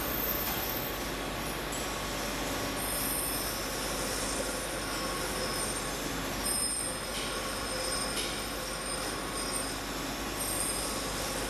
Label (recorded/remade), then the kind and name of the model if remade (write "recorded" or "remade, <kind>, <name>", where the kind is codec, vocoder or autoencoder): recorded